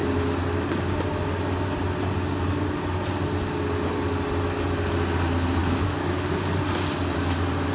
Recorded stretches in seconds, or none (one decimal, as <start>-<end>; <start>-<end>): 0.0-5.6; 6.6-7.7

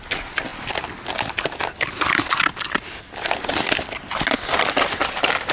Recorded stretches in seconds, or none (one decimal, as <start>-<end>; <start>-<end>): 0.0-5.5

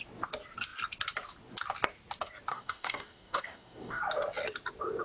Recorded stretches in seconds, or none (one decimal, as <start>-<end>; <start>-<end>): 0.0-2.5; 4.0-5.0

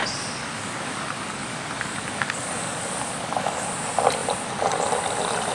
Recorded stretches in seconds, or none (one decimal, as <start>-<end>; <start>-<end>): 0.0-0.4; 3.7-5.5

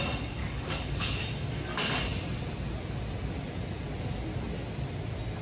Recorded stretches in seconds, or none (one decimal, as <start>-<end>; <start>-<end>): 0.0-0.4; 1.2-5.4

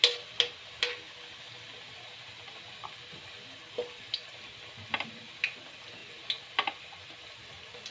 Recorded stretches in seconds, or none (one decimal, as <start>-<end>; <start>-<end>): 0.0-7.9

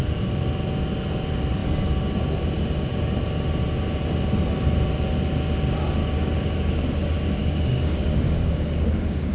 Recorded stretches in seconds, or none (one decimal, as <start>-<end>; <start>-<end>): 0.0-6.0; 6.8-7.4